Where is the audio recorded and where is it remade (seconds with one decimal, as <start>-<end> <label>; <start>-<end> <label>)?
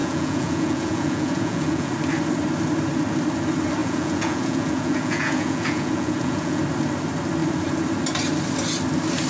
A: 0.0-1.9 remade; 1.9-3.8 recorded; 3.8-6.6 remade; 6.6-9.3 recorded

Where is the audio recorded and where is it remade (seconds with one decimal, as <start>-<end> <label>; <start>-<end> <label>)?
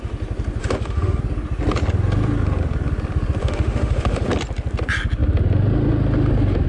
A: 0.0-0.6 recorded; 0.6-1.2 remade; 1.2-3.4 recorded; 3.4-4.3 remade; 4.3-6.7 recorded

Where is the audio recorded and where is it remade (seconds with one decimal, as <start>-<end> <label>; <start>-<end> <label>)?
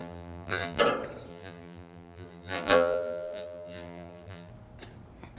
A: 0.0-0.8 remade; 0.8-1.3 recorded; 1.3-4.5 remade; 4.5-5.4 recorded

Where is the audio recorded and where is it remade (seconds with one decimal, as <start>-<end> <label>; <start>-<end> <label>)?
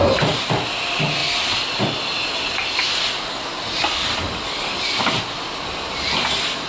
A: 0.0-6.7 recorded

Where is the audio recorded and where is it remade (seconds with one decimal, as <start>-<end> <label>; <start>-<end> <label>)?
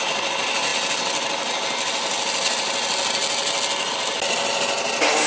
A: 0.0-5.3 recorded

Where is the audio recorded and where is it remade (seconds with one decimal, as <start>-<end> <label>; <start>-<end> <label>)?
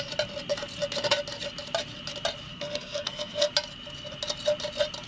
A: 0.0-2.5 recorded; 2.5-3.5 remade; 3.5-5.1 recorded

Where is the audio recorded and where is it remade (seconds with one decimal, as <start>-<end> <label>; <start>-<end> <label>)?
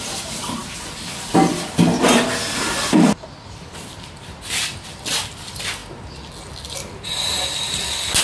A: 0.0-8.2 recorded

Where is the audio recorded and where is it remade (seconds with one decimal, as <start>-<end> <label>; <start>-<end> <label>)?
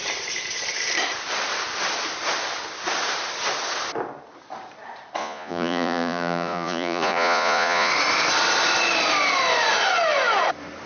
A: 0.0-5.2 recorded; 5.2-7.9 remade; 7.9-10.9 recorded